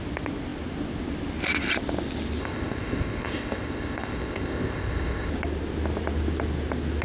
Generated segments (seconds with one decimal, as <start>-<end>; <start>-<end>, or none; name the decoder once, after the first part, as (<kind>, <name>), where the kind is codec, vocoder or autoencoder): 2.4-5.3 (codec, ZipCodec)